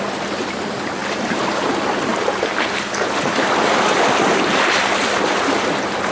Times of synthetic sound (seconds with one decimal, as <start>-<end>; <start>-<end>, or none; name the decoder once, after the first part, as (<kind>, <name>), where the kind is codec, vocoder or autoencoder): 1.0-1.7 (vocoder, BigVGAN v2); 2.1-6.1